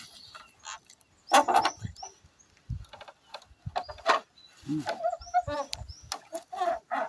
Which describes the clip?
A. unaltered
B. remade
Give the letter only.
A